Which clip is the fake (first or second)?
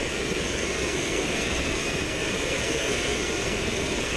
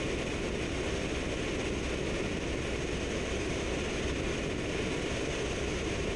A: first